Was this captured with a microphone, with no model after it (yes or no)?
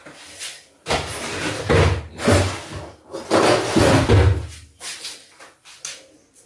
yes